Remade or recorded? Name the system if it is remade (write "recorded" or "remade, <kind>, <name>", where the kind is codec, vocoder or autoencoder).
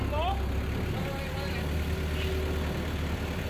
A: recorded